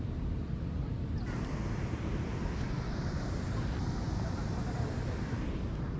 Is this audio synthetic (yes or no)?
no